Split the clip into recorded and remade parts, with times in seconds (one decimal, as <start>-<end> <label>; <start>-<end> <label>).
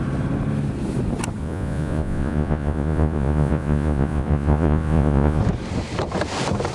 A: 0.0-1.4 recorded; 1.4-5.4 remade; 5.4-6.7 recorded